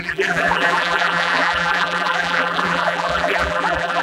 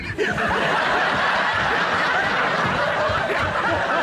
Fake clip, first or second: first